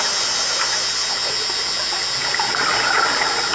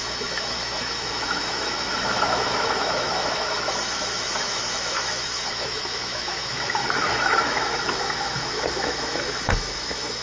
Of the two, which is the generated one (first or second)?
second